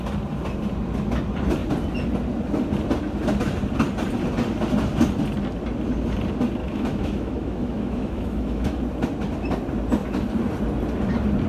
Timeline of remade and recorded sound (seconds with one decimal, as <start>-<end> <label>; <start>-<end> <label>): 0.0-6.6 recorded; 6.6-8.8 remade; 8.8-11.5 recorded

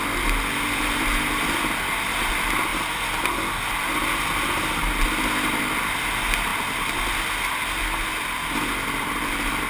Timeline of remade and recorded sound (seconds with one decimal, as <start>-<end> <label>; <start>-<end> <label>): 0.0-9.7 recorded

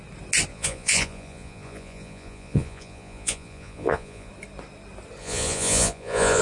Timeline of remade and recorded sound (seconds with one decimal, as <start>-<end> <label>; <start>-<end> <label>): 0.0-0.5 recorded; 0.5-4.3 remade; 4.3-5.2 recorded; 5.2-6.4 remade

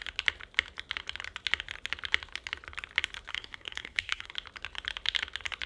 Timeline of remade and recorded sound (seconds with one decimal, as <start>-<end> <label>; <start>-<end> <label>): 0.0-3.3 recorded; 3.3-4.3 remade; 4.3-5.7 recorded

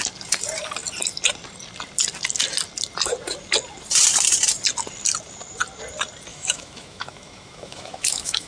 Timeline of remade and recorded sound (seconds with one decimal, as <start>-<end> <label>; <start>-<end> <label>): 0.0-6.3 recorded; 6.3-8.5 remade

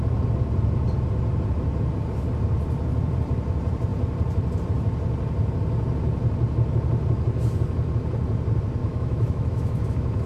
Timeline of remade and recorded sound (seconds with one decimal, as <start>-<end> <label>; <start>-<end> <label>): 0.0-8.8 recorded; 8.8-10.3 remade

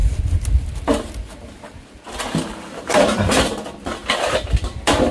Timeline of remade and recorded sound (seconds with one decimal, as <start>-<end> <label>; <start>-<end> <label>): 0.0-2.9 recorded; 2.9-5.1 remade